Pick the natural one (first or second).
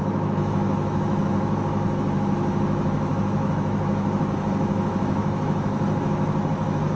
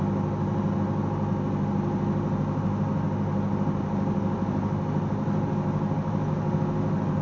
second